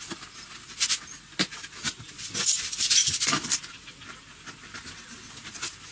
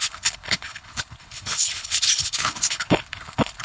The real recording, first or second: first